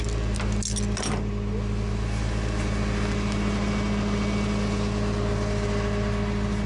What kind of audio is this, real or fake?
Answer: real